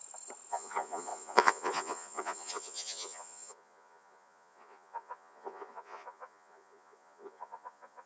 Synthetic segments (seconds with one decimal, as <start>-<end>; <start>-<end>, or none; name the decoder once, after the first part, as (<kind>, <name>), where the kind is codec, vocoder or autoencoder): 0.5-8.1 (vocoder, Vocos)